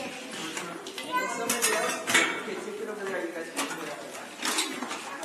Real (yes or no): yes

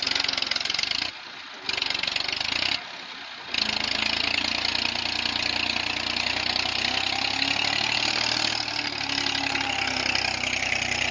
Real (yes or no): yes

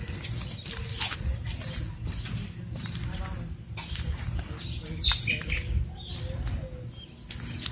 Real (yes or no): yes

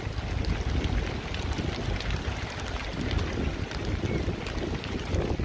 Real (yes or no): yes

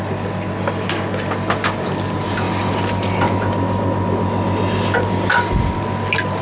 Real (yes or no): yes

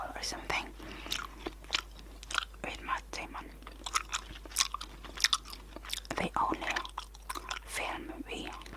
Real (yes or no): yes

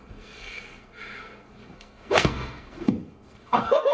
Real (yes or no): no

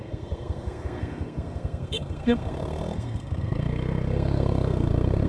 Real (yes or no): no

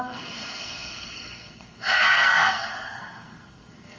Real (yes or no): no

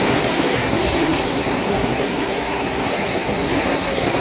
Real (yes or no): no